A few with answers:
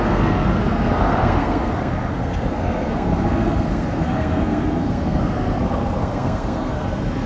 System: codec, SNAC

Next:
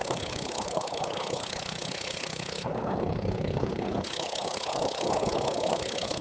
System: codec, HILCodec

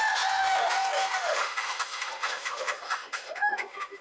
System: autoencoder, DAC-VAE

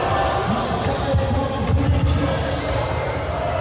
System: none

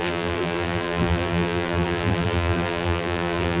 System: vocoder, BigVGAN v2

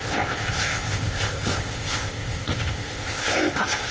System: codec, ZipCodec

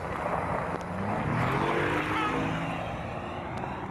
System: none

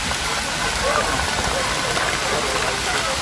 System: none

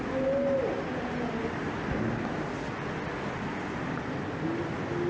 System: none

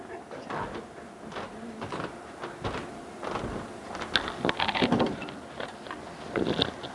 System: none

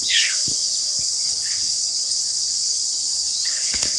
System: codec, HILCodec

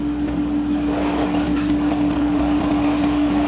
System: codec, DAC